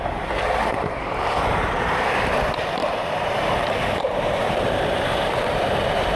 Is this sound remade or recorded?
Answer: remade